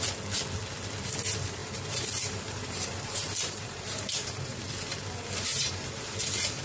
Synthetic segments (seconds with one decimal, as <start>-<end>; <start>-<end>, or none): 1.6-4.6; 5.5-6.1